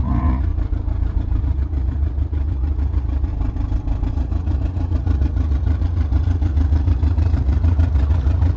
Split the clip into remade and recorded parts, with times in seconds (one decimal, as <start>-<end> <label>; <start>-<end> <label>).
0.0-0.5 remade; 0.5-1.4 recorded; 1.4-3.3 remade; 3.3-4.1 recorded; 4.1-8.6 remade